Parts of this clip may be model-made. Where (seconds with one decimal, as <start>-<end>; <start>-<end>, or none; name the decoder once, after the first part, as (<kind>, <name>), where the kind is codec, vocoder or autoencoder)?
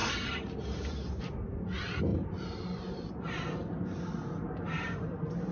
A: 0.0-1.2 (vocoder, BigVGAN v2); 2.1-5.5